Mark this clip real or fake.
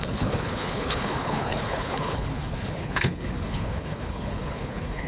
fake